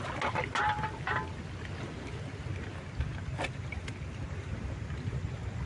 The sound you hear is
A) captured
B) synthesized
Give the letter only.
A